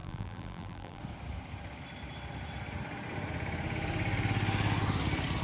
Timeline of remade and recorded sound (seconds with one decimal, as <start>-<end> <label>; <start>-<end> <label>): 0.0-1.0 remade; 1.0-5.4 recorded